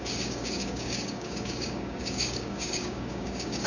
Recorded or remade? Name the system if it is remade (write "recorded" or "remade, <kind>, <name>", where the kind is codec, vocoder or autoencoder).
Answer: remade, codec, DAC